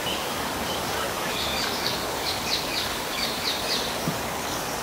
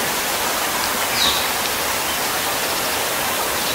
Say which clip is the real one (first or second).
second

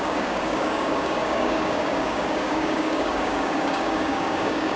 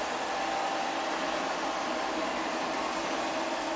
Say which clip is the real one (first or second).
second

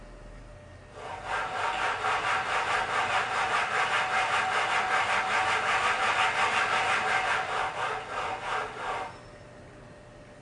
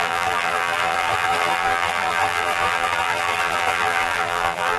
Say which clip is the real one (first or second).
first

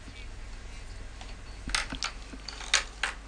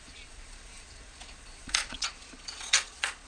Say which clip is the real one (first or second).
first